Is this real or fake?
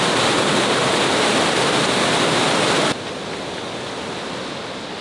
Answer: real